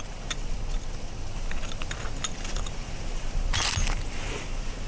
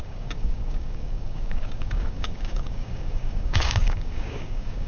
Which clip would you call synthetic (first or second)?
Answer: second